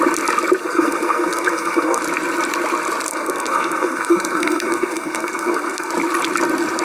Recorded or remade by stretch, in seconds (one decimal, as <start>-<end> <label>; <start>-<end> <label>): 0.0-0.6 recorded; 0.6-2.0 remade; 2.0-3.1 recorded; 3.1-5.9 remade; 5.9-6.8 recorded